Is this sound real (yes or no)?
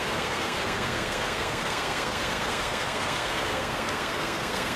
no